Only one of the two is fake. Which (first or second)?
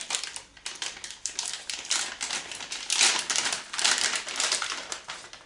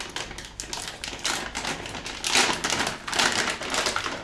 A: first